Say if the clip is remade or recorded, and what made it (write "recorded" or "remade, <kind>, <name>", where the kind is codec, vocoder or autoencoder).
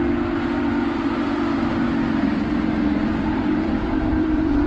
remade, vocoder, BigVGAN v2